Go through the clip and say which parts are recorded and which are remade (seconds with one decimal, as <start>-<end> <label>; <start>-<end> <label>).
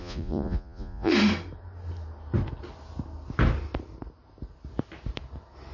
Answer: 0.0-1.1 remade; 1.1-5.7 recorded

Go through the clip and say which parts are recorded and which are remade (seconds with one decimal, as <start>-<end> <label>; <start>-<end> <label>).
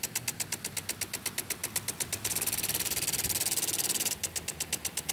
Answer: 0.0-5.1 recorded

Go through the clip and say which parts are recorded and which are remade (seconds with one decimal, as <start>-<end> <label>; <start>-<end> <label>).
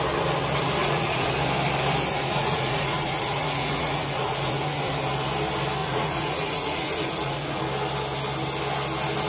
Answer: 0.0-0.8 recorded; 0.8-1.3 remade; 1.3-2.1 recorded; 2.1-4.9 remade; 4.9-5.8 recorded; 5.8-7.6 remade; 7.6-9.3 recorded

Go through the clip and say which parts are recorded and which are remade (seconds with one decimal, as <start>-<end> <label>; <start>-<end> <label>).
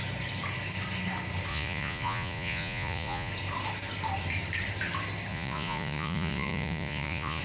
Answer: 0.0-1.5 recorded; 1.5-3.3 remade; 3.3-5.3 recorded; 5.3-7.4 remade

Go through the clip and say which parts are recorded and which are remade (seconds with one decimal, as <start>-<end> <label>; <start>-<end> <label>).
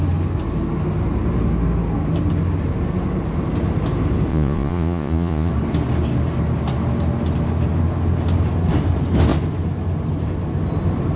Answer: 0.0-4.3 recorded; 4.3-5.5 remade; 5.5-11.2 recorded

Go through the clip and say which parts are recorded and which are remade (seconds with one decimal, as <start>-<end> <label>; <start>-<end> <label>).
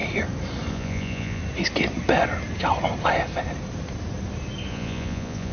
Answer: 0.0-0.7 recorded; 0.7-1.4 remade; 1.4-4.7 recorded; 4.7-5.5 remade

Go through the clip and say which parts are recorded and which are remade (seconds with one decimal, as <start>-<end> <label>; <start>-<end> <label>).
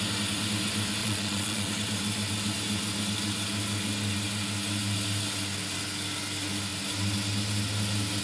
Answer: 0.0-1.0 recorded; 1.0-1.7 remade; 1.7-8.2 recorded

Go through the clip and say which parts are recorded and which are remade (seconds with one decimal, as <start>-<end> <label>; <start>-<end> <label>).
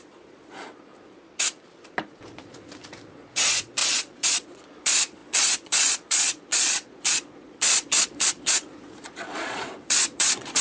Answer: 0.0-0.9 remade; 0.9-3.1 recorded; 3.1-10.6 remade